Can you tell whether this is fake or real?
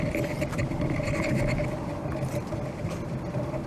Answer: real